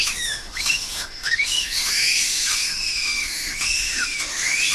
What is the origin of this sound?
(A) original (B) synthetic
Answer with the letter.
B